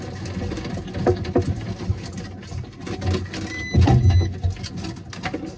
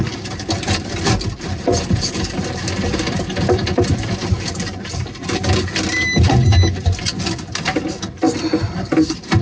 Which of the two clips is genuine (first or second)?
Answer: first